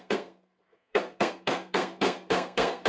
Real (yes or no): no